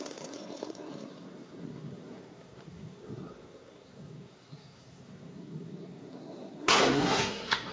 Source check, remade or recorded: remade